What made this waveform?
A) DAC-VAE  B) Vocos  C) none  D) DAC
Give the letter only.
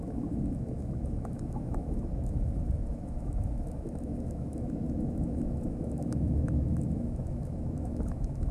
A